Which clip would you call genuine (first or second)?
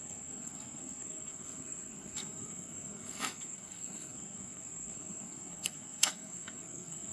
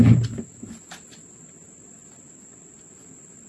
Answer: second